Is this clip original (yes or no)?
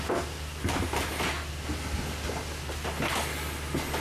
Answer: yes